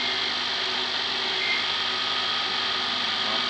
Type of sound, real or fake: real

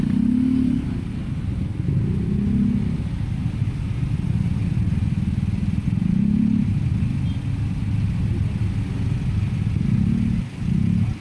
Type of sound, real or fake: real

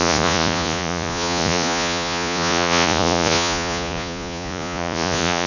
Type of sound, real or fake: fake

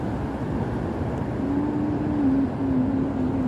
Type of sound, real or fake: real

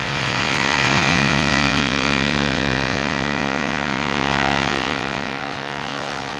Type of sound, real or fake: fake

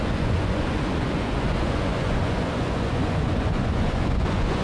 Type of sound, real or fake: fake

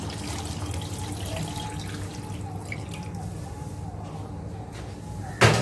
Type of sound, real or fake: real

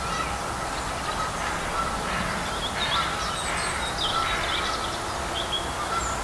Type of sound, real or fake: real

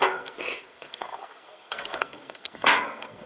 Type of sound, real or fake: fake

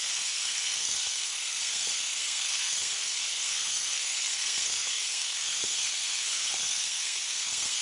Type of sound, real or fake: fake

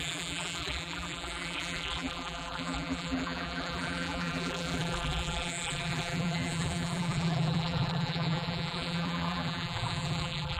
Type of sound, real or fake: fake